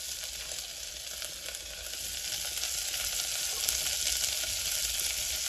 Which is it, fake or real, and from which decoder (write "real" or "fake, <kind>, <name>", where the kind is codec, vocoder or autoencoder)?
real